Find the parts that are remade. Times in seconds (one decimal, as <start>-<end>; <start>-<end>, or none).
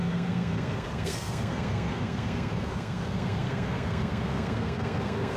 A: 0.0-5.4